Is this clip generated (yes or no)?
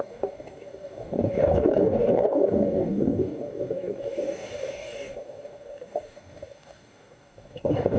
yes